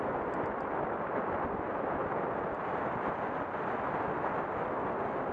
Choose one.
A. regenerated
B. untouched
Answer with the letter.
B